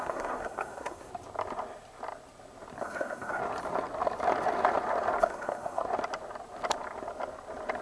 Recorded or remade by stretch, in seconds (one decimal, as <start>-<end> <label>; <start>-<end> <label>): 0.0-1.1 remade; 1.1-2.8 recorded; 2.8-3.4 remade; 3.4-5.2 recorded; 5.2-5.8 remade; 5.8-7.8 recorded